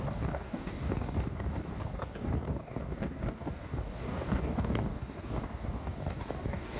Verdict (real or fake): fake